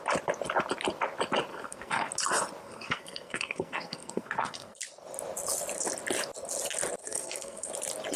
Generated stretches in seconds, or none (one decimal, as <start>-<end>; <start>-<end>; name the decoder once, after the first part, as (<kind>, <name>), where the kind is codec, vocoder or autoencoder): 1.5-2.1 (codec, SNAC); 2.6-4.8; 7.0-7.7